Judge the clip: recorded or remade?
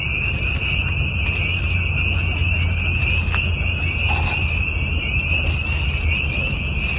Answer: recorded